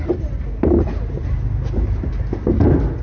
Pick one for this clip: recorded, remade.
recorded